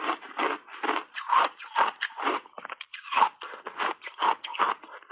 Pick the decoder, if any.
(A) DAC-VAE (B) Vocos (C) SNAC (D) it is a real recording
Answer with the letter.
D